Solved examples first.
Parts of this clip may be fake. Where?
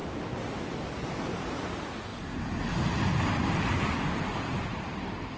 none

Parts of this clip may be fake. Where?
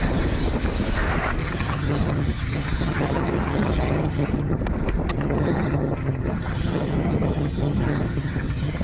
1.4-4.6 (vocoder, HiFi-GAN); 5.1-8.8